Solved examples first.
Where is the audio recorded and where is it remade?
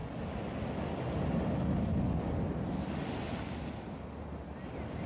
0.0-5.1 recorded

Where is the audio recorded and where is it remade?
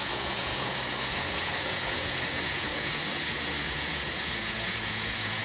0.0-5.4 remade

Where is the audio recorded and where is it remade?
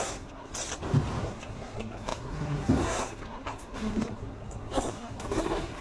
0.0-0.5 remade; 0.5-1.2 recorded; 1.2-5.8 remade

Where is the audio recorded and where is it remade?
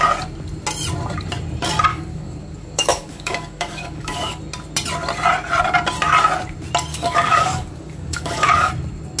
0.0-1.9 recorded; 1.9-4.4 remade; 4.4-6.9 recorded; 6.9-8.7 remade; 8.7-9.2 recorded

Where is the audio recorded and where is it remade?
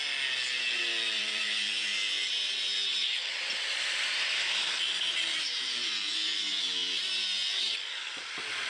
0.0-1.2 recorded; 1.2-6.8 remade; 6.8-7.6 recorded; 7.6-8.7 remade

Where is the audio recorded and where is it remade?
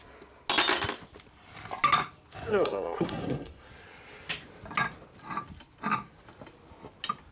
0.0-2.5 recorded; 2.5-3.7 remade; 3.7-7.3 recorded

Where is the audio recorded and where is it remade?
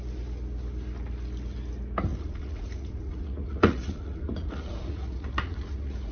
0.0-2.1 recorded; 2.1-6.1 remade